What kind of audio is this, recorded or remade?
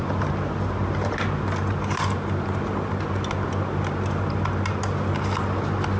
recorded